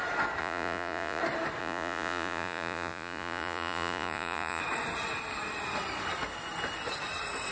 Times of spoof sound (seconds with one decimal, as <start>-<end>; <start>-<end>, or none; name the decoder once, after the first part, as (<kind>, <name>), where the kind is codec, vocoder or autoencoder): 0.4-1.2 (vocoder, Vocos); 1.6-4.6